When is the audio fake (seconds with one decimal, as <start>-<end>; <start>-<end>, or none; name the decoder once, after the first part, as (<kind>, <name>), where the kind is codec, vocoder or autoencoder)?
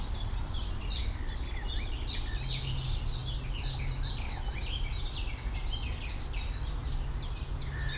none